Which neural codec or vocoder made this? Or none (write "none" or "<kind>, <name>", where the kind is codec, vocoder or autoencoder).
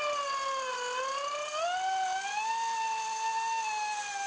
none